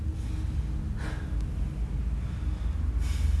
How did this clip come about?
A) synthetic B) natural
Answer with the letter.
B